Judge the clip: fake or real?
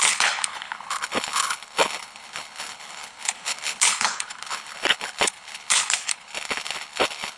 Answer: fake